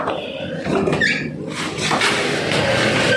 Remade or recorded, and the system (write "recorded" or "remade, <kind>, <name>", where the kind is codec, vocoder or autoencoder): remade, vocoder, BigVGAN v2